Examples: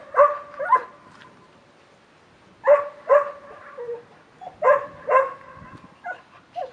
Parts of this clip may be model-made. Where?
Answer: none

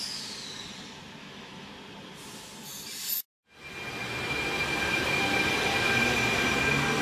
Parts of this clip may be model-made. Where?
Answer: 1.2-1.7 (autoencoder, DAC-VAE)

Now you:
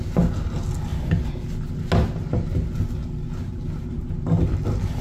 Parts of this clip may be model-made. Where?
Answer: none